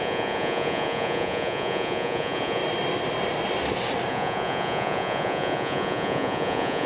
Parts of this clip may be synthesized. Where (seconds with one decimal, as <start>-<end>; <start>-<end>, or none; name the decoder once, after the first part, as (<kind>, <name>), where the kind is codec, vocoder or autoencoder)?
0.0-2.6 (vocoder, Vocos); 4.1-6.9